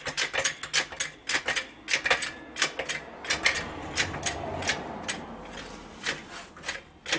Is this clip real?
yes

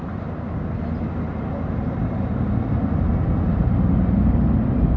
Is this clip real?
yes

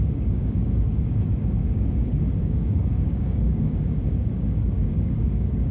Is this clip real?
no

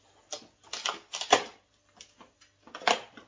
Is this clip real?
yes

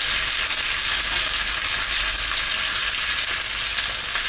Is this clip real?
yes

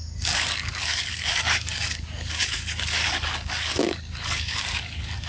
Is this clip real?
no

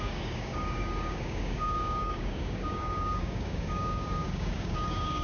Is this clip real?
no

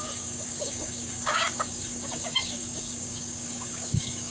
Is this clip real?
no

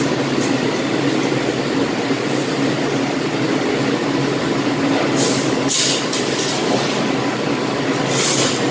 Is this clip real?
yes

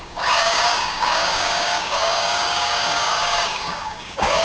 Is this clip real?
no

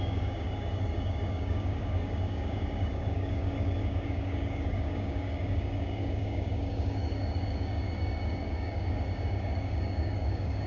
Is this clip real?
no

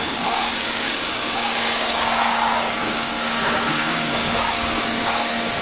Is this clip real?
no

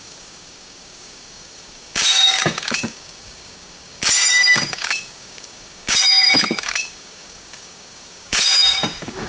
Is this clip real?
no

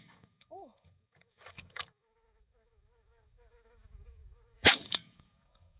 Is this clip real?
no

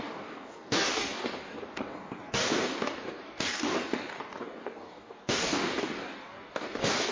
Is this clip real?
no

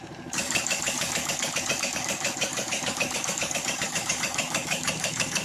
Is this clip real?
no